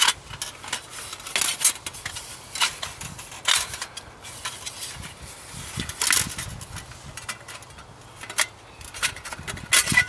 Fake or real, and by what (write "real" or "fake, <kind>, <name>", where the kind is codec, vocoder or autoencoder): real